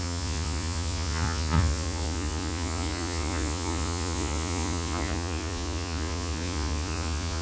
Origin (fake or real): fake